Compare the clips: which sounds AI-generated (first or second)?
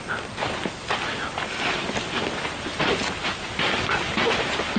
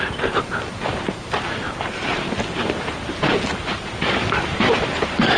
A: second